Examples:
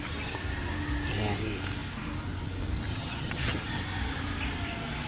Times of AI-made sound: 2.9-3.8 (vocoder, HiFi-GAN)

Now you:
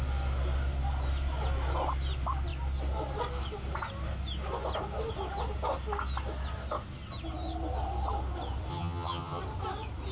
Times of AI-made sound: 8.7-9.4 (vocoder, HiFi-GAN)

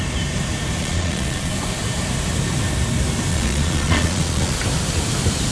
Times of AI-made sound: 0.8-1.5 (vocoder, Vocos); 3.3-4.6

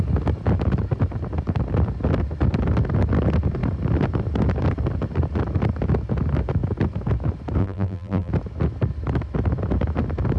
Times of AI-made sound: 7.6-8.3 (vocoder, BigVGAN v2)

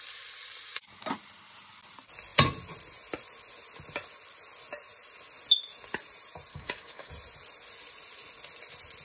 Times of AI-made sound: 6.5-7.1 (codec, DAC)

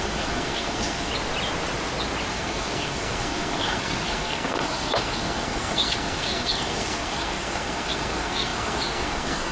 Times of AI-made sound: 0.0-1.1 (codec, SNAC); 2.3-9.5